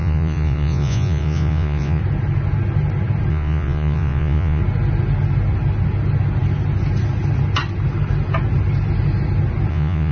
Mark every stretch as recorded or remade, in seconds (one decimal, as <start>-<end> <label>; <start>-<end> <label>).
0.0-2.0 remade; 2.0-3.3 recorded; 3.3-4.6 remade; 4.6-9.7 recorded; 9.7-10.1 remade